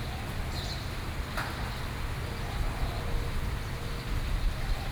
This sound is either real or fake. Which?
real